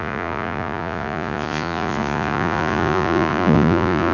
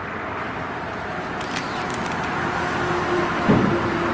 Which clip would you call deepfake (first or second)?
first